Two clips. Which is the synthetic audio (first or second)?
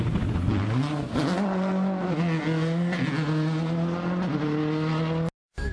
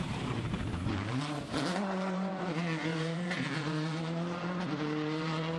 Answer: second